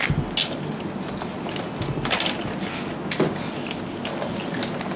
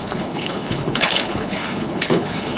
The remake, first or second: second